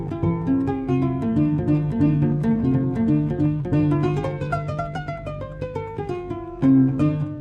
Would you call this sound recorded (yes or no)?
no